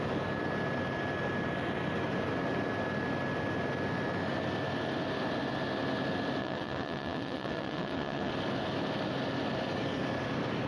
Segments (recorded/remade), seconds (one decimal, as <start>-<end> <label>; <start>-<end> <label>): 0.0-6.4 recorded; 6.4-8.3 remade; 8.3-10.7 recorded